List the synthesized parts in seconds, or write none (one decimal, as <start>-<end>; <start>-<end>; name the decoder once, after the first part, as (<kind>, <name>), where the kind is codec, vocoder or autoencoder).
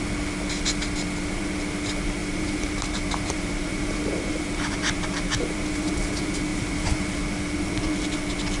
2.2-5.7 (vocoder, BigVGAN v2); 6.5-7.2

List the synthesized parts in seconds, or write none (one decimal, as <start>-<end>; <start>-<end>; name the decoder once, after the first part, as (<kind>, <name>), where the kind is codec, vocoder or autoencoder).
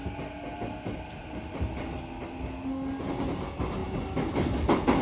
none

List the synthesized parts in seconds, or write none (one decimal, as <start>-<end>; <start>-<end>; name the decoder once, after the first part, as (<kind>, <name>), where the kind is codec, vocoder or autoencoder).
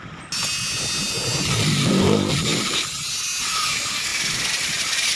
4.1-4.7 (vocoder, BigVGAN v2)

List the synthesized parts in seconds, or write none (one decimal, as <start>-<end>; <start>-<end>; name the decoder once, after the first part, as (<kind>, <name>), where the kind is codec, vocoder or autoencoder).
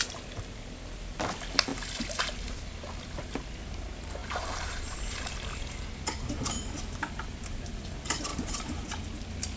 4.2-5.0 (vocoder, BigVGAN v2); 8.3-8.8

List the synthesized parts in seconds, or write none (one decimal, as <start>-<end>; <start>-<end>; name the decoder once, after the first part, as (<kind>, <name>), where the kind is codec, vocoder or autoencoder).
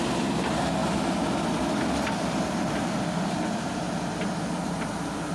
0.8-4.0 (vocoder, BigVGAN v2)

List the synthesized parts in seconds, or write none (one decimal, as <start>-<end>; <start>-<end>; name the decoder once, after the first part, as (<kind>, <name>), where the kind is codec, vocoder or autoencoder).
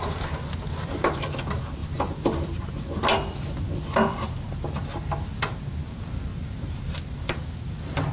6.3-6.9 (vocoder, BigVGAN v2)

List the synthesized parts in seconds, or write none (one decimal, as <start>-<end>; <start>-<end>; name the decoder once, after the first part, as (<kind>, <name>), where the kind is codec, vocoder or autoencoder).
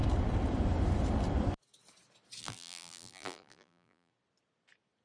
2.4-4.1 (vocoder, BigVGAN v2)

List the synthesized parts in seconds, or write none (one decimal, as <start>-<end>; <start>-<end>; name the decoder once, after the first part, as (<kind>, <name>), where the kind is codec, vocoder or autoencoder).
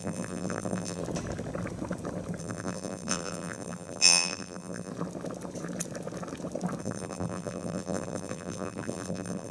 0.0-1.0 (vocoder, BigVGAN v2); 2.4-4.9; 6.8-9.5